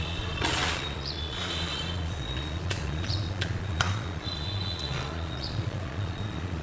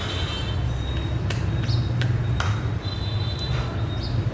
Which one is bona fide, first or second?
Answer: second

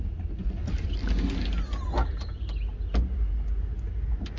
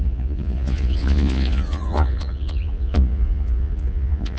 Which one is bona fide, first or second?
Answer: first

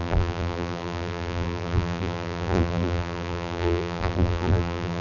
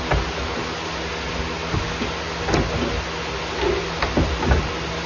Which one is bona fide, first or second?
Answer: second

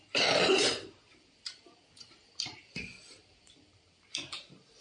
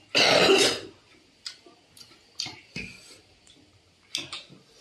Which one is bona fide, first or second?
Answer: second